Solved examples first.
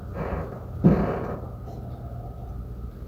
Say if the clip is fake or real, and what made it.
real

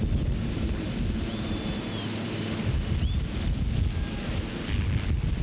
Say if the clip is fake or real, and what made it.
real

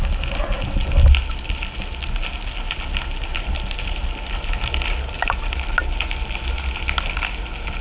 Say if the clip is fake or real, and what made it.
real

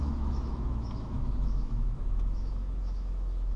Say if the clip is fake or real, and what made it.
fake, autoencoder, DAC-VAE